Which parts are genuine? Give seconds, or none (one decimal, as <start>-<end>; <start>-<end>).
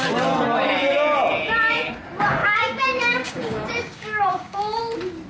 0.0-2.4; 4.8-5.3